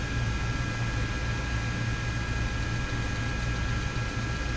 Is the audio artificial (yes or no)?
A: no